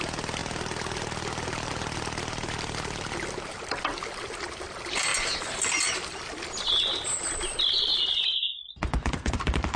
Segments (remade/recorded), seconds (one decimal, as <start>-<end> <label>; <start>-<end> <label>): 0.0-9.8 recorded